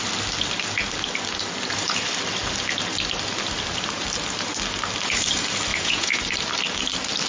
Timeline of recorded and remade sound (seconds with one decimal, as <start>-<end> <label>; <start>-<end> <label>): 0.0-5.7 recorded; 5.7-6.2 remade; 6.2-7.3 recorded